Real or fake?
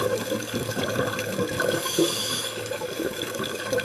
fake